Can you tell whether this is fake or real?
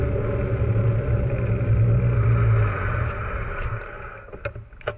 real